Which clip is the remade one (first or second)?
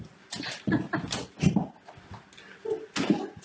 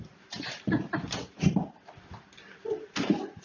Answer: second